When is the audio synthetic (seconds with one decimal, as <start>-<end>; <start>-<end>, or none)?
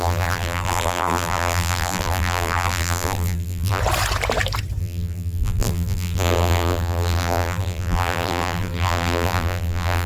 0.0-3.8; 4.8-10.1